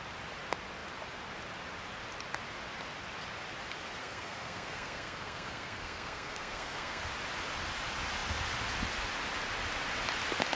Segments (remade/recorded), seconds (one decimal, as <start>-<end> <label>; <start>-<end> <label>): 0.0-4.0 recorded; 4.0-7.0 remade; 7.0-10.6 recorded